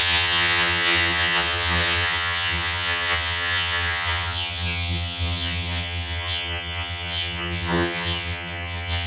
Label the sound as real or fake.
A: fake